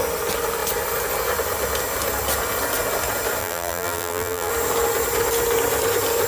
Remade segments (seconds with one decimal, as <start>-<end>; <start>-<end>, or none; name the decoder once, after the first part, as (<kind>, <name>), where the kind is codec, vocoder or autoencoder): 3.4-4.5 (vocoder, BigVGAN v2)